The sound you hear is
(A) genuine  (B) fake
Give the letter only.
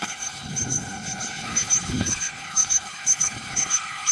B